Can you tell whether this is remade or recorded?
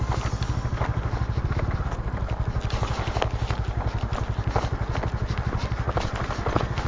recorded